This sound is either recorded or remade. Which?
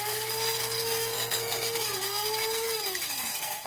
remade